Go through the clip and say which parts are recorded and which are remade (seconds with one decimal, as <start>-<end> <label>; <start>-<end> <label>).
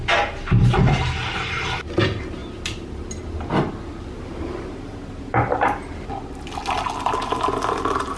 0.0-8.2 recorded